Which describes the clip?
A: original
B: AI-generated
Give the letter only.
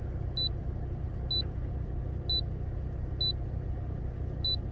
A